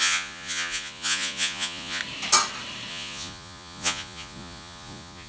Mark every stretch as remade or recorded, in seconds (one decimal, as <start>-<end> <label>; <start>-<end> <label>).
0.0-2.0 remade; 2.0-2.9 recorded; 2.9-5.3 remade